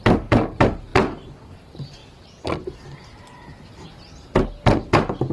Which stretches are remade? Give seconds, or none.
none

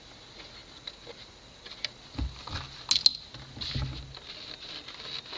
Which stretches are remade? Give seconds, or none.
none

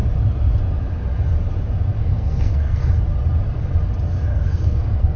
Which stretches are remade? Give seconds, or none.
2.0-3.0 (codec, SNAC); 4.3-5.2

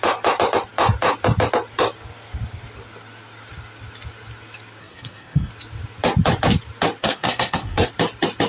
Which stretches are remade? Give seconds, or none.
4.8-5.5 (codec, SNAC); 7.0-7.9

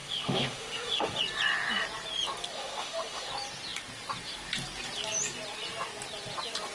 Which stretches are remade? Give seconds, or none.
0.0-1.2 (autoencoder, DAC-VAE); 2.5-3.3

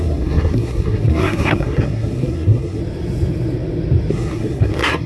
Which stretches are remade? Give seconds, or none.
0.0-2.8 (codec, SNAC); 4.1-5.1